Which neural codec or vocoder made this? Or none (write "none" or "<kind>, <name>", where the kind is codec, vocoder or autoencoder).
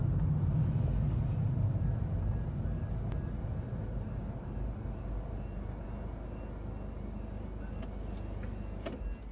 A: none